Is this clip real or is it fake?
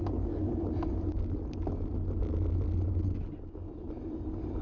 real